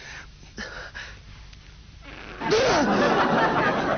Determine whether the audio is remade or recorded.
recorded